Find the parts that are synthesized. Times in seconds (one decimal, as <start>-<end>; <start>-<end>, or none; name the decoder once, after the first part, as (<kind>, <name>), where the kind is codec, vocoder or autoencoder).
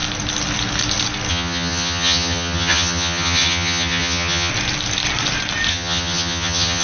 1.3-4.5 (vocoder, HiFi-GAN); 5.7-6.8